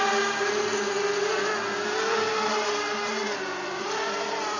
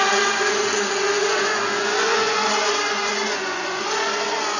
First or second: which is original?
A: first